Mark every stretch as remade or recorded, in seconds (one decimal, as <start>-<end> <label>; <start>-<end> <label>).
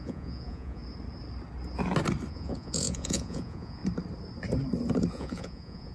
0.0-0.8 remade; 0.8-2.3 recorded; 2.3-3.8 remade; 3.8-5.1 recorded; 5.1-5.9 remade